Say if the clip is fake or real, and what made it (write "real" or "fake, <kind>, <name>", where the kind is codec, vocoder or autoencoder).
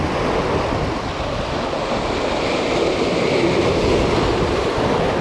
real